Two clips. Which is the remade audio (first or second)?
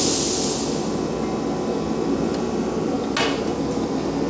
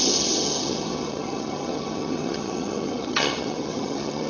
second